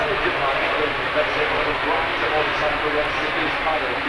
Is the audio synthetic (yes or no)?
no